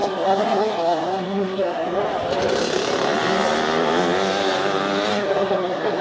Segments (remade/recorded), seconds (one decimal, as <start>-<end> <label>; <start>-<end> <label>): 0.0-2.0 remade; 2.0-5.1 recorded; 5.1-6.0 remade